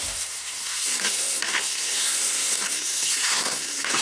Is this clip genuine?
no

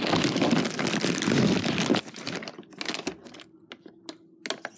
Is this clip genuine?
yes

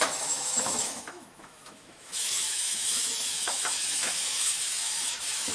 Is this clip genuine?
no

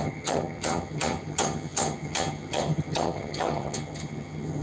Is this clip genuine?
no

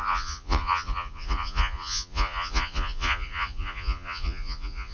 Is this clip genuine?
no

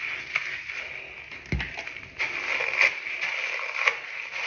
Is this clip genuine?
yes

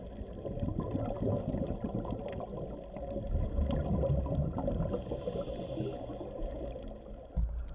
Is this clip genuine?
yes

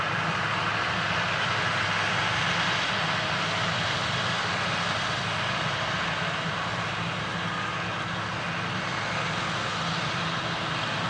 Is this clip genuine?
yes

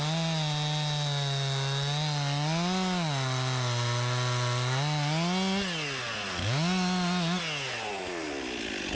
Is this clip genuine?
yes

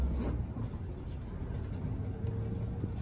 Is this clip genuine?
yes